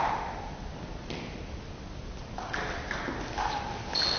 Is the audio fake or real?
real